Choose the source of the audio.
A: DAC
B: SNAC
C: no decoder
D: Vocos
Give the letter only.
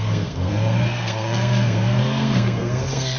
B